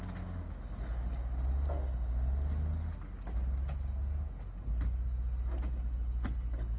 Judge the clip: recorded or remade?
recorded